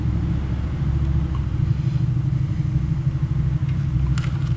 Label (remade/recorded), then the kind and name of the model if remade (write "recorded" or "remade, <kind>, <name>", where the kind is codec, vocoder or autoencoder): recorded